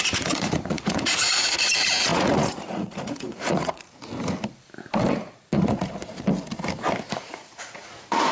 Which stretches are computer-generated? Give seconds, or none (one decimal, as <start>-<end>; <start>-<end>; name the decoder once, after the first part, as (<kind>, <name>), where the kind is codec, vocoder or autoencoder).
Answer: 0.0-4.1 (vocoder, Vocos); 5.1-5.9; 7.1-8.3